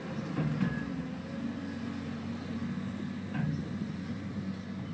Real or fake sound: real